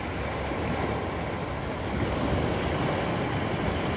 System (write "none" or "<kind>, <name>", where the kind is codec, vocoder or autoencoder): vocoder, BigVGAN v2